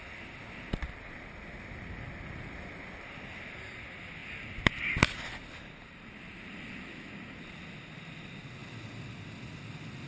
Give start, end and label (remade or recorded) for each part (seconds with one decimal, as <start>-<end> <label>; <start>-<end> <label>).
0.0-10.1 recorded